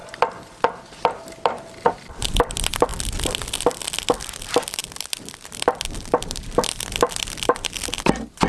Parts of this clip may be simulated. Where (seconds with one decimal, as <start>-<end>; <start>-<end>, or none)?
none